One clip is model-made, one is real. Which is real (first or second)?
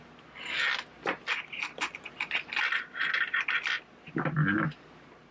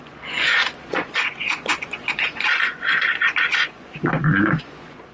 first